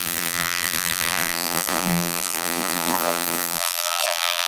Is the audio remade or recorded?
remade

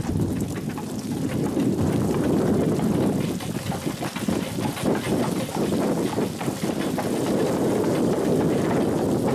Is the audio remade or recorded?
recorded